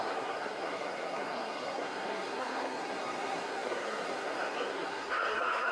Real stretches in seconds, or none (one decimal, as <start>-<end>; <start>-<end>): none

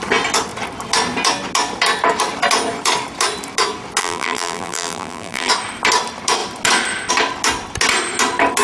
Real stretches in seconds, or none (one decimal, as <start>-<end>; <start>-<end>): 0.0-4.0; 5.5-8.6

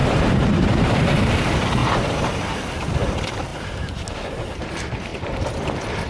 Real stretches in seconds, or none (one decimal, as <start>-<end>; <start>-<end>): 1.4-1.8; 2.3-3.5; 4.4-5.1; 5.6-6.1